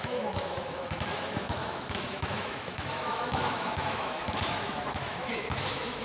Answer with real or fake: fake